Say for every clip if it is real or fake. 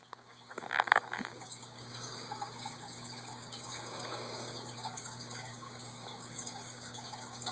fake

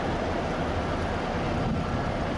real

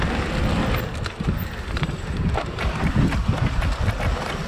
real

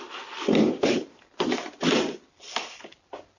real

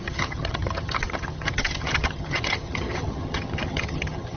fake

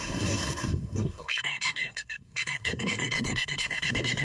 fake